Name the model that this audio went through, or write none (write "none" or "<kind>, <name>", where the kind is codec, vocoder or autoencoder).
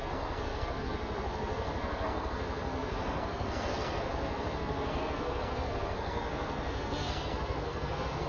codec, SNAC